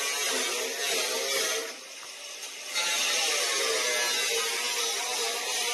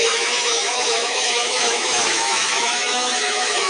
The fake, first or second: second